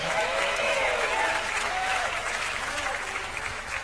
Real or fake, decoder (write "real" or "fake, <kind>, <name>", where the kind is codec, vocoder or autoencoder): fake, autoencoder, DAC-VAE